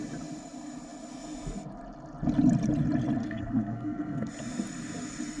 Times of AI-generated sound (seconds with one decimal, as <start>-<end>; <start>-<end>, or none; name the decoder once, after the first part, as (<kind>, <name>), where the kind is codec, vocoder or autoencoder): 3.2-4.3 (codec, SNAC)